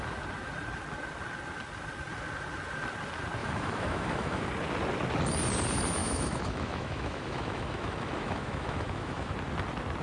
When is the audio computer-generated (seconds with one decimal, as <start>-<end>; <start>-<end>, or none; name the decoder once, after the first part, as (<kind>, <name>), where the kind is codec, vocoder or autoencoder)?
3.4-4.5 (autoencoder, DAC-VAE); 6.0-9.3

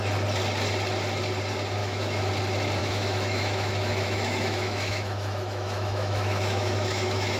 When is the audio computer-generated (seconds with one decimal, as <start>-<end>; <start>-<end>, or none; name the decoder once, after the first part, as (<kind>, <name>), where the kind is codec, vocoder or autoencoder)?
1.8-2.3 (autoencoder, DAC-VAE); 2.8-7.4